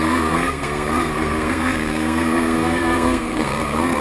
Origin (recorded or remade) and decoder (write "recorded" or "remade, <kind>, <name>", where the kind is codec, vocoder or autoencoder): remade, codec, SNAC